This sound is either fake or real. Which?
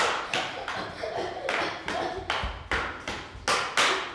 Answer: real